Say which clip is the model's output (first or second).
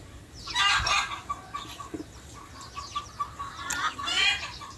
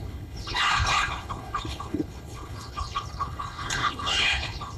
second